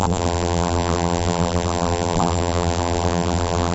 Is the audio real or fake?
fake